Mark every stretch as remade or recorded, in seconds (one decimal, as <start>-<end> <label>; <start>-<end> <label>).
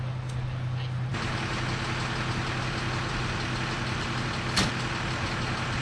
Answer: 0.0-5.8 recorded